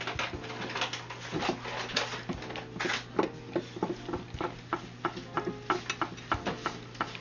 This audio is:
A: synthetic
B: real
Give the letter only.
B